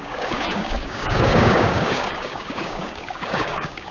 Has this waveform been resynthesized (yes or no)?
yes